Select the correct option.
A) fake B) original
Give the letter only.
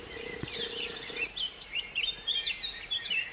A